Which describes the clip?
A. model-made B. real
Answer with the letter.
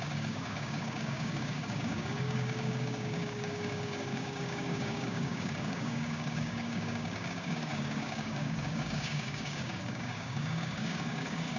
A